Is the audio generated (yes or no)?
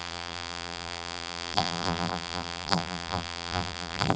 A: yes